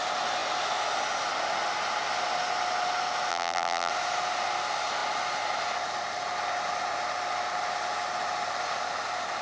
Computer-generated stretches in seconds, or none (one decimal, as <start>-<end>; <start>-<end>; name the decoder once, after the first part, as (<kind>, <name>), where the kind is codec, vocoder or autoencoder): 3.3-3.9 (vocoder, BigVGAN v2)